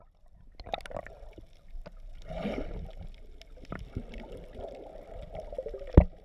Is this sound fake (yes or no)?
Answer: no